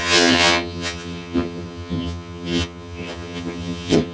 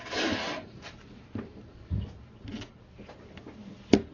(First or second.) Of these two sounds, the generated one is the first